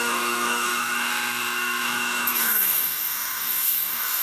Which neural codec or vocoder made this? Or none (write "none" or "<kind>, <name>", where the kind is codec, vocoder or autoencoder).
codec, DAC